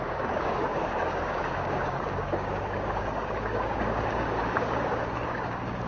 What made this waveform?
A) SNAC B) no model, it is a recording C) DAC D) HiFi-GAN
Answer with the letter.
C